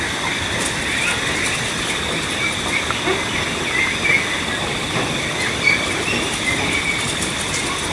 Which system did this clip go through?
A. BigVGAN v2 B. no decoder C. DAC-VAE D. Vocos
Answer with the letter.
B